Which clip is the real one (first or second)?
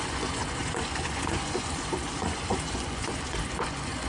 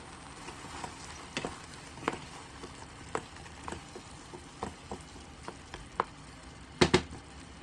second